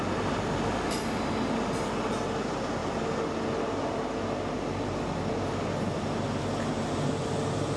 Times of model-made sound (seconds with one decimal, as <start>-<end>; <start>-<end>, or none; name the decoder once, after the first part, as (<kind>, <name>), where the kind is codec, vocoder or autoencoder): none